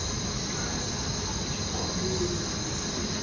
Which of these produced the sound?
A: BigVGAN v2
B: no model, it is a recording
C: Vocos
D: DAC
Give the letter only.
B